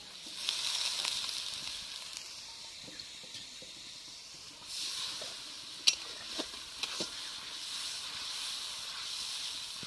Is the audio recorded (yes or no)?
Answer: yes